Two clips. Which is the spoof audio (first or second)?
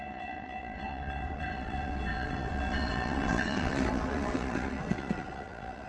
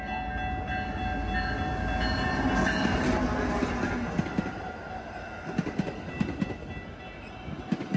first